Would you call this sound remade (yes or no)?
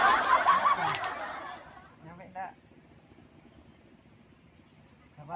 no